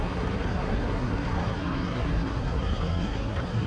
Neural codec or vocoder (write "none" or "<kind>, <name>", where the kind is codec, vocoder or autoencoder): codec, SNAC